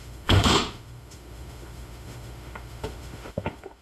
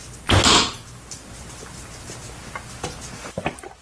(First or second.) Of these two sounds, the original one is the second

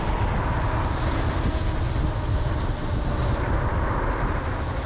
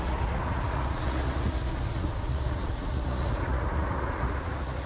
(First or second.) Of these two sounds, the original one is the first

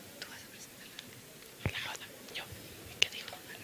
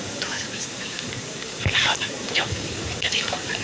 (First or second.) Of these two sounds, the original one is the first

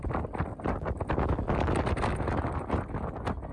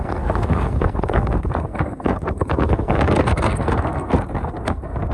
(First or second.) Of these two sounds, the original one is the first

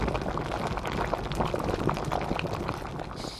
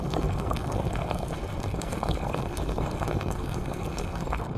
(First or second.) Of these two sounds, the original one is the first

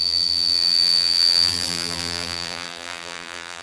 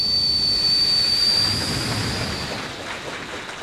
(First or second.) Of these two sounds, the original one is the second